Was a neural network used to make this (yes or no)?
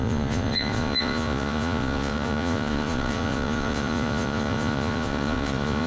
yes